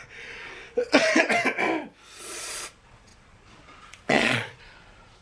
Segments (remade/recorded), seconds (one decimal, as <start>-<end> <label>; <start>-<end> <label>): 0.0-1.3 remade; 1.3-2.2 recorded; 2.2-5.2 remade